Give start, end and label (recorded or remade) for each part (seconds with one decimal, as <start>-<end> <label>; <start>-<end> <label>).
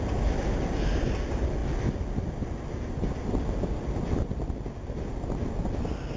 0.0-6.2 recorded